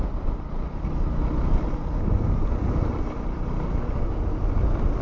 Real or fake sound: real